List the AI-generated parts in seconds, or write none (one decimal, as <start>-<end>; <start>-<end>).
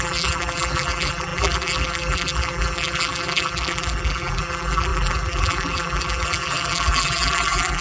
0.0-7.8